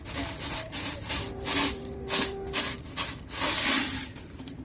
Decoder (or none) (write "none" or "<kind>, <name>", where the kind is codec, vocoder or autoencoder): none